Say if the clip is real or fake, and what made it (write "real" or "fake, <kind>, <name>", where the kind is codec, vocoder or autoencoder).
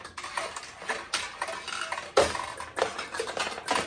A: real